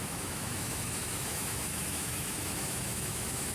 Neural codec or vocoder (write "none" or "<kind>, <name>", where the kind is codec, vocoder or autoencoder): autoencoder, DAC-VAE